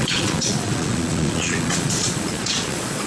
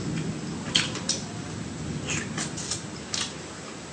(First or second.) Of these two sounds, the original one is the second